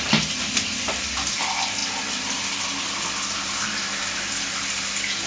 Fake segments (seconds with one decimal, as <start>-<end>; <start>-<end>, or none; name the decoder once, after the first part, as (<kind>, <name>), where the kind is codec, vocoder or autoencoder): none